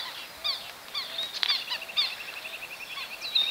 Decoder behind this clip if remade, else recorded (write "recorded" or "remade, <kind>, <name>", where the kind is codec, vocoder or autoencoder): recorded